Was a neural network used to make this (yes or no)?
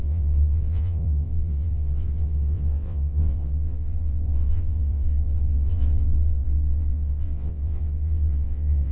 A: yes